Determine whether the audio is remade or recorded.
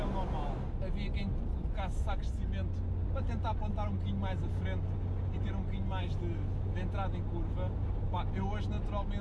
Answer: recorded